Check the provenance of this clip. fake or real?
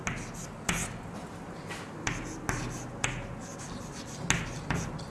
real